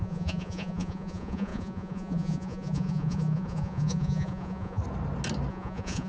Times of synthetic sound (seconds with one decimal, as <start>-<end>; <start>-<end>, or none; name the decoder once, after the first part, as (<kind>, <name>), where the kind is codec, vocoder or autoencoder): 0.0-4.8 (vocoder, Vocos); 5.5-6.1